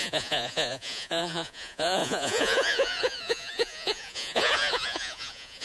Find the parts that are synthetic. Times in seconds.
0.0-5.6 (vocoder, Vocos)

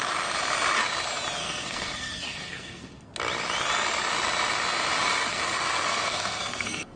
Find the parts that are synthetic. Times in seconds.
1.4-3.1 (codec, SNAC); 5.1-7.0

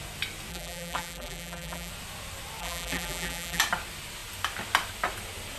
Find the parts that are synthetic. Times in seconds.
0.5-1.9 (vocoder, BigVGAN v2); 2.6-3.6